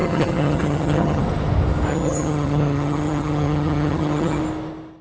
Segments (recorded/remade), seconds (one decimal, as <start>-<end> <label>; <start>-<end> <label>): 0.0-1.2 remade; 1.2-1.9 recorded; 1.9-4.4 remade; 4.4-5.0 recorded